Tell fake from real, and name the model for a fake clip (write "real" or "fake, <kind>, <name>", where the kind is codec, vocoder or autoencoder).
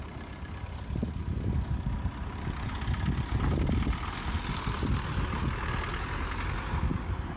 real